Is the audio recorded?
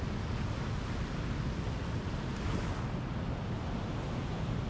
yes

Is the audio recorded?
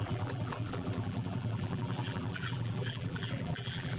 no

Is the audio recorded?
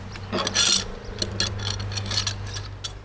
yes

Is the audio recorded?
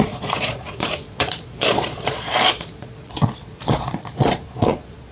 no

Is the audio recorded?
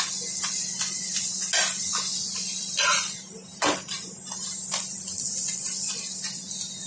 yes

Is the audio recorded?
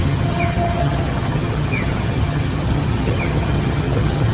no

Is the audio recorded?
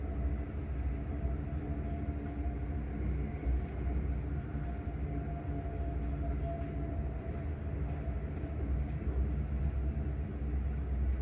yes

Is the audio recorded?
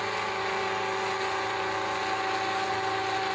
yes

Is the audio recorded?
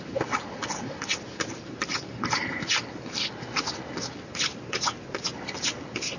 yes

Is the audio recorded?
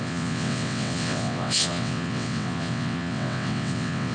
no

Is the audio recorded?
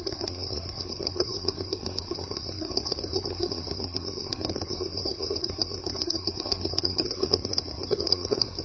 no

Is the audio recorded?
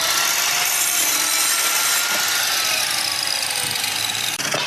yes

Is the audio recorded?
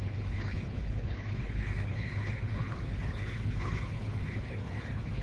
no